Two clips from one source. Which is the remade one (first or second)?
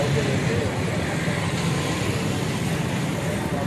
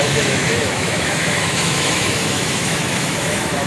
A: second